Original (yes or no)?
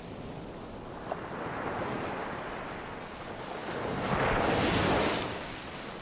yes